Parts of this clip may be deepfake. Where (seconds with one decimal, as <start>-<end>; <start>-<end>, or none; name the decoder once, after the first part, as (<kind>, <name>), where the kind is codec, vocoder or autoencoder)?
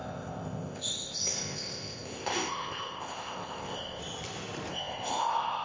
0.0-4.0 (codec, ZipCodec); 4.7-5.6